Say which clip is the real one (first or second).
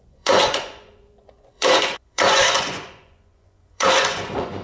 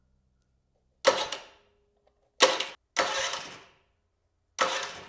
second